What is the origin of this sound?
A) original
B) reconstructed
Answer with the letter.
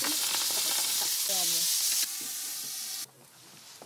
A